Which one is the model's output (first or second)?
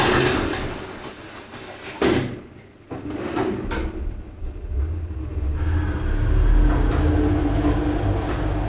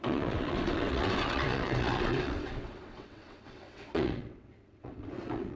second